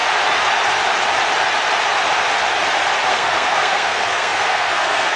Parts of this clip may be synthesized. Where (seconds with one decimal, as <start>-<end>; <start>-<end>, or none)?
3.1-5.2